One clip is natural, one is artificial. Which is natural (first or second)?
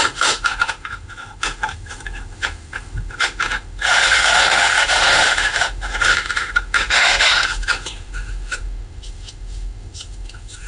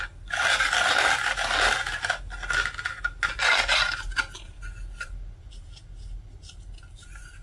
second